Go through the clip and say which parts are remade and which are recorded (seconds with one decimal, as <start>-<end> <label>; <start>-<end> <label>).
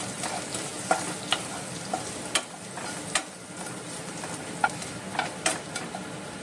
0.0-6.4 recorded